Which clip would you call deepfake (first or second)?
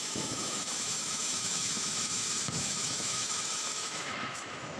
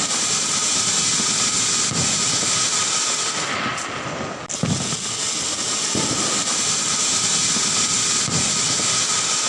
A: first